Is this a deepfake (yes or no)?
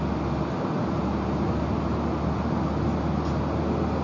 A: no